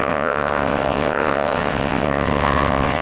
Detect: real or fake fake